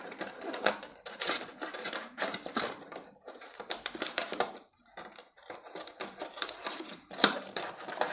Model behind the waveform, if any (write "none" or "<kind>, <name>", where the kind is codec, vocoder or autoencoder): vocoder, BigVGAN v2